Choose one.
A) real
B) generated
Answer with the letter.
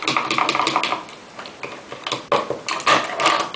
A